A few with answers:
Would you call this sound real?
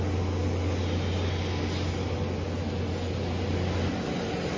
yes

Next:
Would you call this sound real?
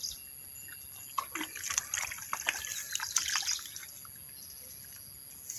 yes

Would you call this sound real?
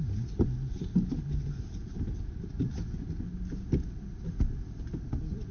yes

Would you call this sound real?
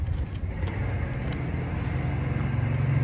yes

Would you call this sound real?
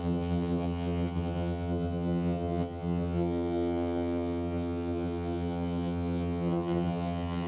no